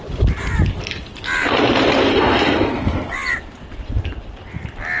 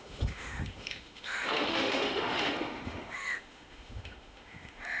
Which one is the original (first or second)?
first